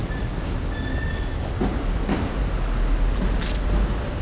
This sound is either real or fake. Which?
real